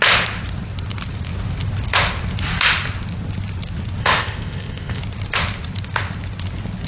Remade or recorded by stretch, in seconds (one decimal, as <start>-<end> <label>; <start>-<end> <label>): 0.0-4.0 recorded; 4.0-5.0 remade; 5.0-6.9 recorded